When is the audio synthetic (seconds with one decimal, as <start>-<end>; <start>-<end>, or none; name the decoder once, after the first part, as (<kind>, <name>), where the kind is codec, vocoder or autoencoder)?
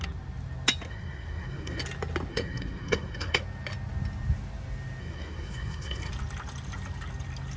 0.9-1.8 (codec, SNAC); 2.3-3.4; 5.0-6.1